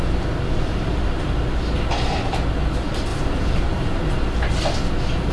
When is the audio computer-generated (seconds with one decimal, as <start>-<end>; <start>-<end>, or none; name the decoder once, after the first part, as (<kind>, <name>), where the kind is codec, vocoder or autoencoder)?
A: 3.1-4.3 (vocoder, BigVGAN v2)